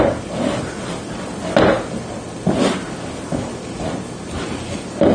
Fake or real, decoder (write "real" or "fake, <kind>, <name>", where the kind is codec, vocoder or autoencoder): real